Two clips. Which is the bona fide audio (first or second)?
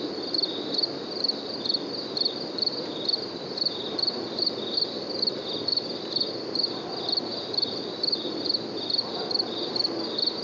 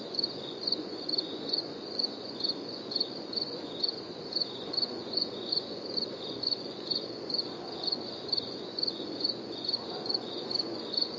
first